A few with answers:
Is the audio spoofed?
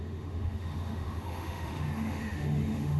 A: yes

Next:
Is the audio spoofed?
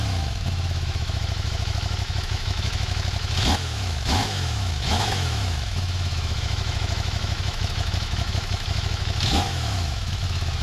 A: yes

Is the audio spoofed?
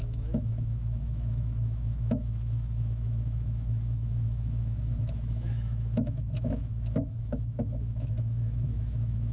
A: yes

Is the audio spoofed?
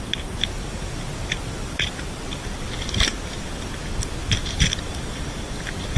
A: no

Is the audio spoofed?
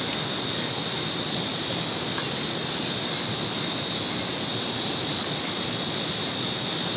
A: no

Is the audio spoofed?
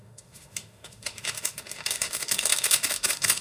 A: yes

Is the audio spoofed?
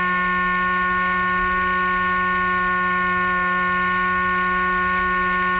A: no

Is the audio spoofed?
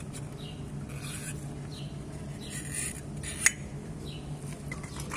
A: no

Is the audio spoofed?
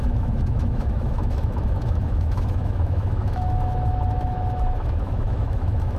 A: yes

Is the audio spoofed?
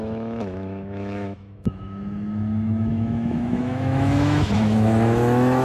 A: yes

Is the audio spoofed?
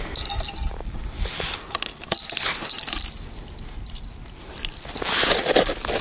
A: no